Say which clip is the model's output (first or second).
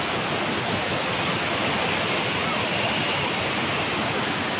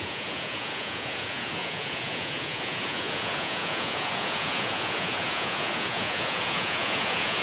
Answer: second